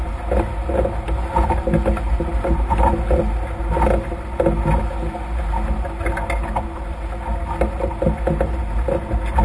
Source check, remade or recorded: recorded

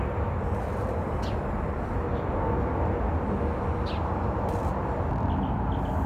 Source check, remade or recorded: recorded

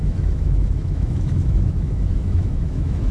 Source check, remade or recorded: remade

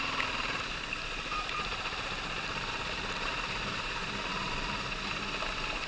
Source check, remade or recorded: recorded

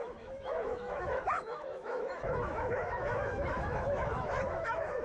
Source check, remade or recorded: remade